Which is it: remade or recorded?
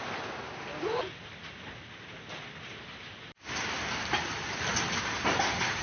recorded